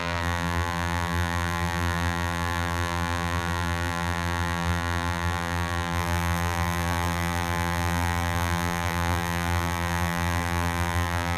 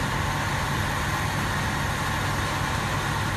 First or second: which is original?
second